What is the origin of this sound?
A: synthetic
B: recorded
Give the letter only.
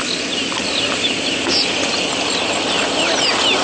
B